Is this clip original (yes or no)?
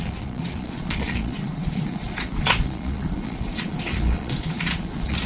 no